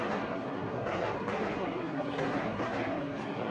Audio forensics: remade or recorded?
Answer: remade